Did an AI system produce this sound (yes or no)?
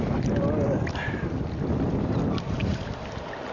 no